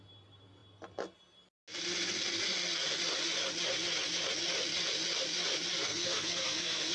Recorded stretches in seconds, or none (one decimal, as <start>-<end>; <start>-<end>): 0.0-5.8